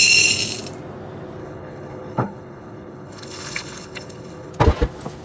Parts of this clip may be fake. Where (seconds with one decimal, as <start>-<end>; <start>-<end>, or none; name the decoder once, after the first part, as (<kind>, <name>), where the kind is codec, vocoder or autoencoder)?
1.4-4.5 (codec, HILCodec)